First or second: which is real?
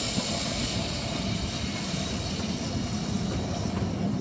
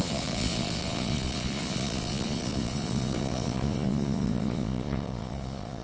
first